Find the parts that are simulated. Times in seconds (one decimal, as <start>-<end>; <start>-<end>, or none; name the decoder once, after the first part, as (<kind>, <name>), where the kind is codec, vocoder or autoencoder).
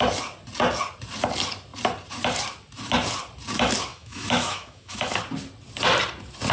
3.9-5.2 (autoencoder, DAC-VAE)